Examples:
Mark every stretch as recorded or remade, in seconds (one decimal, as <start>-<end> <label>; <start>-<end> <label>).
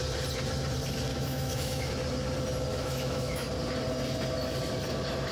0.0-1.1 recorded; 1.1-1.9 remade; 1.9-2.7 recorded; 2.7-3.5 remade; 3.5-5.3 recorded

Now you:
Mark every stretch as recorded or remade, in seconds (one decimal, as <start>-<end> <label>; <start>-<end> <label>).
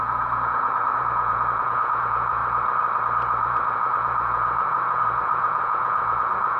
0.0-2.4 remade; 2.4-3.4 recorded; 3.4-6.6 remade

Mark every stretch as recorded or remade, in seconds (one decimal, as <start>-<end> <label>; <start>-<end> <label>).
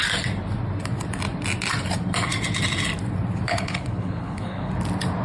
0.0-3.5 recorded; 3.5-4.7 remade; 4.7-5.2 recorded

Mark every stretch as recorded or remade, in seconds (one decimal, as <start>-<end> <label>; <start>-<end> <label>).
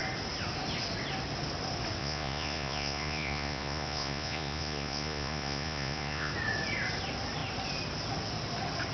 0.0-2.0 recorded; 2.0-6.3 remade; 6.3-8.9 recorded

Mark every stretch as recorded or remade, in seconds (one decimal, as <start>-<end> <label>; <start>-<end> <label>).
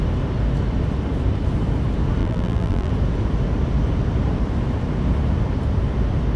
0.0-2.2 recorded; 2.2-2.9 remade; 2.9-6.4 recorded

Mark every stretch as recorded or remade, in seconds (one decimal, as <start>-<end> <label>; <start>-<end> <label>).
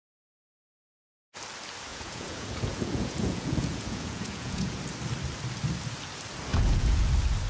0.0-1.9 recorded; 1.9-4.8 remade; 4.8-6.5 recorded; 6.5-7.1 remade; 7.1-7.5 recorded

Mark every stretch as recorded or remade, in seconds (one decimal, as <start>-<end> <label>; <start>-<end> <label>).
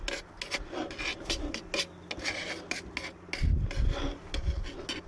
0.0-5.1 recorded